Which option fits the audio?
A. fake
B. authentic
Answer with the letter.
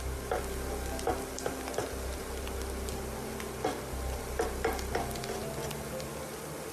B